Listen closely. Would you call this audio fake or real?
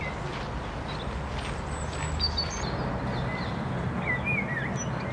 real